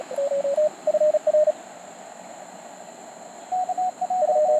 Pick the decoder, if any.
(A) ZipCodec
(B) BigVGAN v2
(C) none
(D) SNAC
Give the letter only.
C